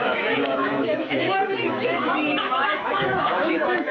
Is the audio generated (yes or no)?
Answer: yes